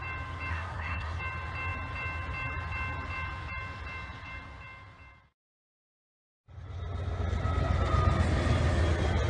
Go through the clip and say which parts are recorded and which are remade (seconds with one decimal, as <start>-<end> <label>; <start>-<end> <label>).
0.0-0.5 recorded; 0.5-1.2 remade; 1.2-9.3 recorded